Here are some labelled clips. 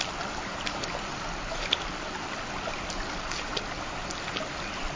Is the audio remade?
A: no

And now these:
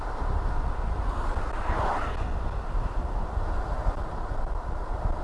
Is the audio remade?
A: no